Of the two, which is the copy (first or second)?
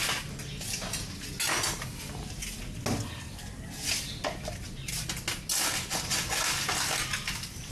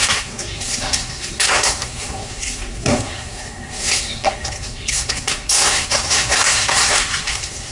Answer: second